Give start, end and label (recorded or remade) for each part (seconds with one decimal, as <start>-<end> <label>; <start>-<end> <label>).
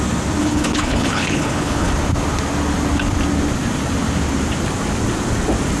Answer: 0.0-0.4 recorded; 0.4-1.9 remade; 1.9-5.8 recorded